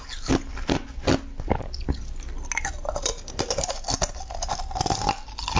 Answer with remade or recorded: recorded